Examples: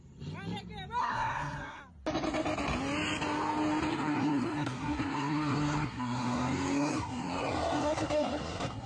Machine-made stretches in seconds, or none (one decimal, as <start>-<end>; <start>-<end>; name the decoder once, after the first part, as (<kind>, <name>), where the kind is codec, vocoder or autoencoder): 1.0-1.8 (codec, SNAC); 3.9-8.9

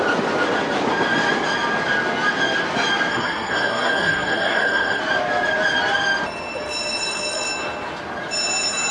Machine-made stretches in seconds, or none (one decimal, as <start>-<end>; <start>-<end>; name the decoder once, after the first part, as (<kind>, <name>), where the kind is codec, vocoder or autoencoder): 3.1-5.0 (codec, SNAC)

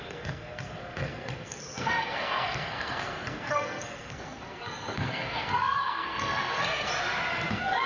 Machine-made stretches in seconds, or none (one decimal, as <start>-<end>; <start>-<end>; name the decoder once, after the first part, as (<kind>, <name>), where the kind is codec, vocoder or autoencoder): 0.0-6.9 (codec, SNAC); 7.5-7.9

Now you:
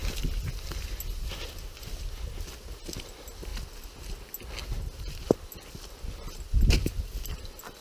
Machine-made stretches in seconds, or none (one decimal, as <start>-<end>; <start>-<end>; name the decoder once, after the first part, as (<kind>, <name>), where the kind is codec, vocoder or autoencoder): none